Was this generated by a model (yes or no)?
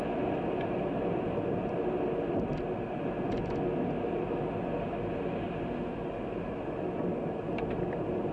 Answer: no